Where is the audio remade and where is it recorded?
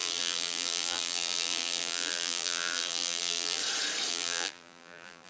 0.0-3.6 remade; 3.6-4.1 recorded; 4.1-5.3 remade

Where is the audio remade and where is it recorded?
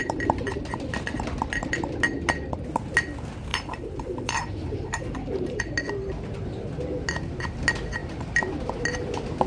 0.0-0.6 remade; 0.6-3.5 recorded; 3.5-5.6 remade; 5.6-9.5 recorded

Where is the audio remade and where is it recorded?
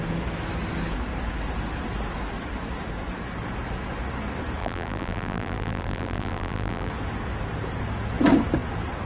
0.0-4.6 recorded; 4.6-6.9 remade; 6.9-9.1 recorded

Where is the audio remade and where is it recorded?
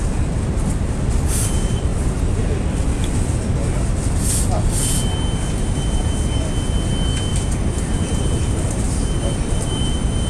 0.0-7.3 recorded; 7.3-10.3 remade